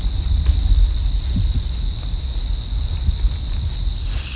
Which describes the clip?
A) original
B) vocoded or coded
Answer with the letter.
A